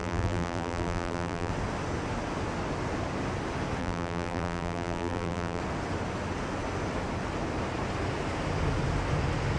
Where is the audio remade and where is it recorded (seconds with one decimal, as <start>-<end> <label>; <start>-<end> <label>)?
0.0-1.5 remade; 1.5-3.8 recorded; 3.8-5.6 remade; 5.6-9.6 recorded